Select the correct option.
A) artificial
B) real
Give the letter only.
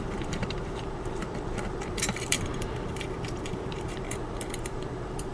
A